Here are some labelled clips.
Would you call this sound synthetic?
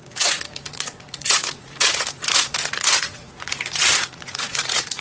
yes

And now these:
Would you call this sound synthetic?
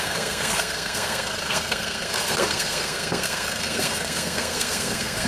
yes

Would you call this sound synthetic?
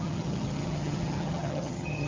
yes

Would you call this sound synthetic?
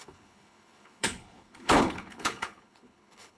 yes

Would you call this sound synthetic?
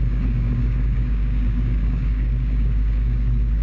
yes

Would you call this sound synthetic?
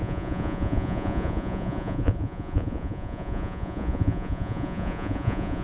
yes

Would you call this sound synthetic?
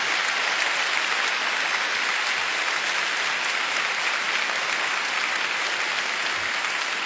no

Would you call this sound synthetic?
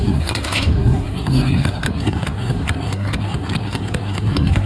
yes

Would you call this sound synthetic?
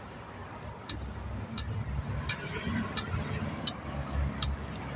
no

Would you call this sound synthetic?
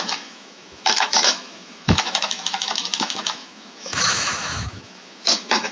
yes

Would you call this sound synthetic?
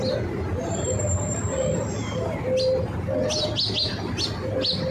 no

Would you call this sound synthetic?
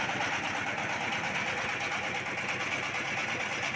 no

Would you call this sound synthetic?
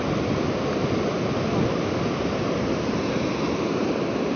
no